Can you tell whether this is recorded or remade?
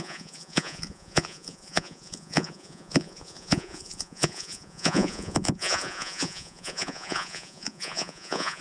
remade